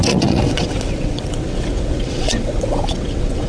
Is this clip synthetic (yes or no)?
yes